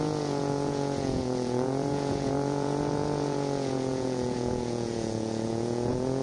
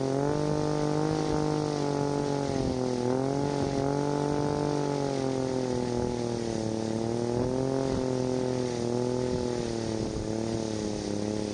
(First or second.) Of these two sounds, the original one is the second